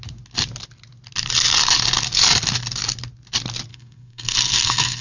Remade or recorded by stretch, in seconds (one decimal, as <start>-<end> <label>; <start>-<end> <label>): 0.0-3.7 recorded; 3.7-5.0 remade